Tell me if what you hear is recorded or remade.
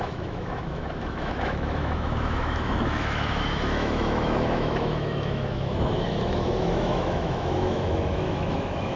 remade